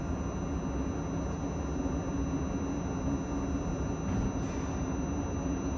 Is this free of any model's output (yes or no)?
yes